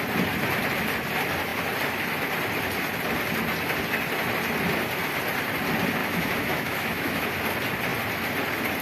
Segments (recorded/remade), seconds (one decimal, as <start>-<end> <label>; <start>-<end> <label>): 0.0-6.0 recorded; 6.0-7.3 remade; 7.3-8.8 recorded